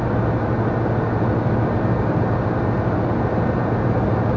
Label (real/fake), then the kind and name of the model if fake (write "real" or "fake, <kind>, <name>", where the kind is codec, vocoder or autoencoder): real